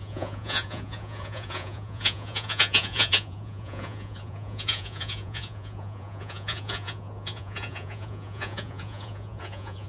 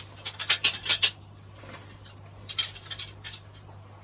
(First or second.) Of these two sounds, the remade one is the first